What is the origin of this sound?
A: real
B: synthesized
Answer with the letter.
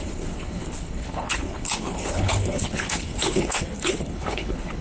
B